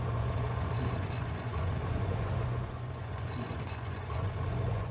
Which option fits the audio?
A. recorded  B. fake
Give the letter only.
B